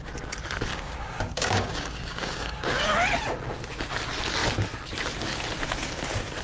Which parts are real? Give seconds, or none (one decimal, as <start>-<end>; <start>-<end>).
0.0-0.7; 2.8-6.4